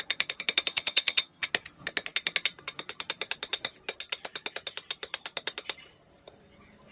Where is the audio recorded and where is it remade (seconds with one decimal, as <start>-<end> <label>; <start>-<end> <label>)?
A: 0.0-0.7 recorded; 0.7-1.5 remade; 1.5-6.9 recorded